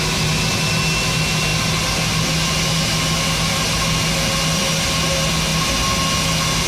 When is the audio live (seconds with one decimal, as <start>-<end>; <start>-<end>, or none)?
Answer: 0.0-6.7